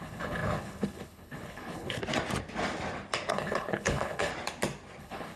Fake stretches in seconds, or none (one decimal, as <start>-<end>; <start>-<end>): 0.0-2.0; 3.3-4.3; 5.0-5.4